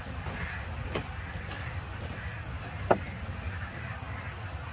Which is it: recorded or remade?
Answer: recorded